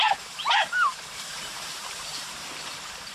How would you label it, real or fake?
fake